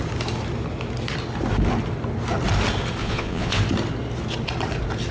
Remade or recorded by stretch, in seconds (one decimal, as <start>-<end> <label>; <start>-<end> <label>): 0.0-3.0 recorded; 3.0-3.6 remade; 3.6-5.1 recorded